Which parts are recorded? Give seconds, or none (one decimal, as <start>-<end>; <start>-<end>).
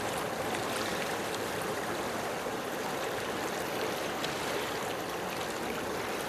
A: 0.0-0.9; 4.5-6.3